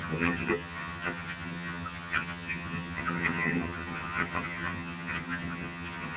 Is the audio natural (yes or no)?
no